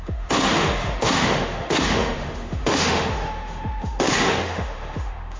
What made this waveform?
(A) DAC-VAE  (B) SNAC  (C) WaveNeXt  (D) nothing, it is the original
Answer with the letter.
A